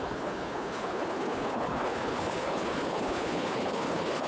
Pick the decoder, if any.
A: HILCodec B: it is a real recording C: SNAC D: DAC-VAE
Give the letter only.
A